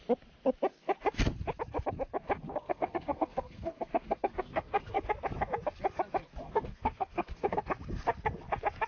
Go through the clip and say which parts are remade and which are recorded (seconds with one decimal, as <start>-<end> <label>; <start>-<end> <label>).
0.0-2.6 recorded; 2.6-5.1 remade; 5.1-6.4 recorded; 6.4-7.6 remade; 7.6-8.9 recorded